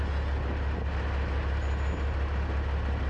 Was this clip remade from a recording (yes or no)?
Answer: no